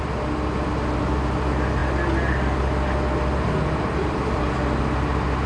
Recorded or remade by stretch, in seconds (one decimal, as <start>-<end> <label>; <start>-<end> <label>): 0.0-5.5 recorded